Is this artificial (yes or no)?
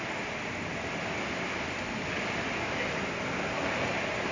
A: no